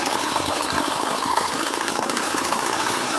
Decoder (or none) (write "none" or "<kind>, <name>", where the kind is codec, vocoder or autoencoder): codec, SNAC